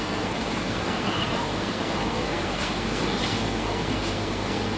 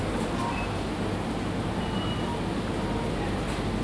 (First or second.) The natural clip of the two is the second